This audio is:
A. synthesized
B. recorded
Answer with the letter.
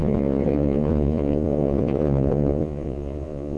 A